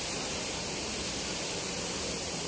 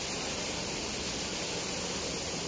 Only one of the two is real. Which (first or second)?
second